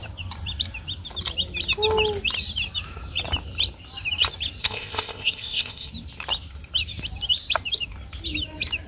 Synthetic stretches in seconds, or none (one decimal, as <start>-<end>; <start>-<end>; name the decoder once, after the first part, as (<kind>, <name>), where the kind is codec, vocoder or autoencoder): 4.6-5.9 (codec, ZipCodec)